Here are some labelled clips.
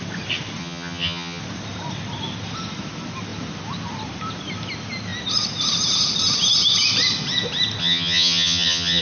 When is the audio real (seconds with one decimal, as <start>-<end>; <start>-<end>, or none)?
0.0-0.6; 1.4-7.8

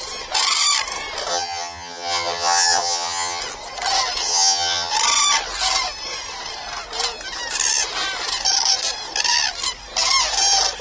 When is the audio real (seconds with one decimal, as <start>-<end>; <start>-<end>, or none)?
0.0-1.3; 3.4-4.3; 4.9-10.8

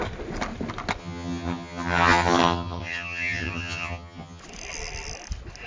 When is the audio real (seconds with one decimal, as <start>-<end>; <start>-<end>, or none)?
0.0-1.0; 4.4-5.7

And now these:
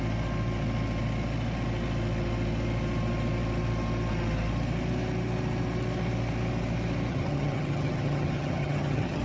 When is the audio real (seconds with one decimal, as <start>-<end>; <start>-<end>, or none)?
0.0-7.1